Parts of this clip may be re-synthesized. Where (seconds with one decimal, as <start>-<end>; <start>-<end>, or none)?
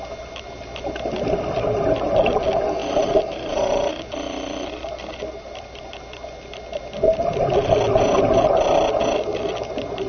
2.8-5.9; 9.3-10.1